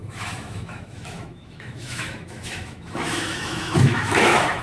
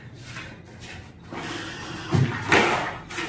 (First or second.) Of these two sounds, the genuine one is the second